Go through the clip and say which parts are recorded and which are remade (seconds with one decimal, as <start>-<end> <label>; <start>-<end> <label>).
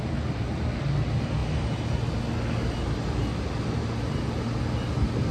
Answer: 0.0-5.3 recorded